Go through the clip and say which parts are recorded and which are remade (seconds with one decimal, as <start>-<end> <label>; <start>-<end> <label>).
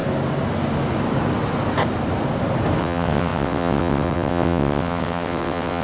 0.0-2.8 recorded; 2.8-5.8 remade